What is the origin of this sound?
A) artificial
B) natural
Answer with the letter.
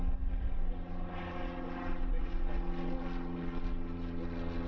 B